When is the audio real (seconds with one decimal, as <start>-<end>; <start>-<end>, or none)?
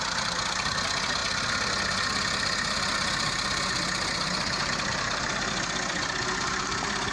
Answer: 0.0-7.1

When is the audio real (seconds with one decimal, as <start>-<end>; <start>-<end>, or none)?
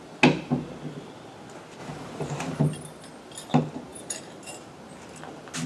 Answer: 0.0-1.8; 2.6-3.9; 4.8-5.7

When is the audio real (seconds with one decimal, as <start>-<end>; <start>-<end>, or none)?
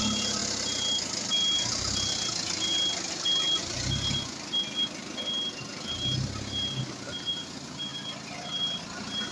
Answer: 0.0-9.3